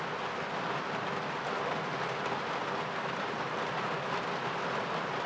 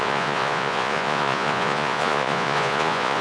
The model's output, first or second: second